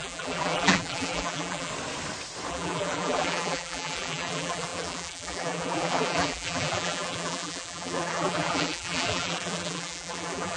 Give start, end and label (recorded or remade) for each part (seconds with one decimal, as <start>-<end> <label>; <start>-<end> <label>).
0.0-1.7 remade; 1.7-2.5 recorded; 2.5-10.6 remade